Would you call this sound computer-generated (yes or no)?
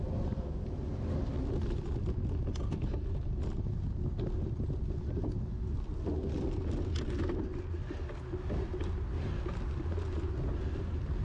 no